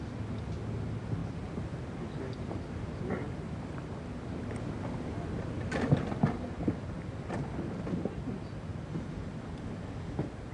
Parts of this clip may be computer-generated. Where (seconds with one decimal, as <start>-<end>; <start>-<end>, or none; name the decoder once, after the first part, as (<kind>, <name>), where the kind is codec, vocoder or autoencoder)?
1.2-4.5 (vocoder, BigVGAN v2)